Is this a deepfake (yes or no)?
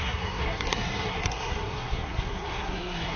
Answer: yes